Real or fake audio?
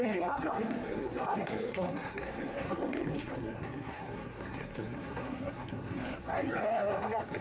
fake